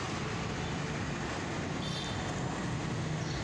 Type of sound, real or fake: real